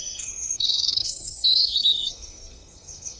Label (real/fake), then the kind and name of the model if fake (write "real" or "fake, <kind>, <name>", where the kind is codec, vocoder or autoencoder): fake, codec, SNAC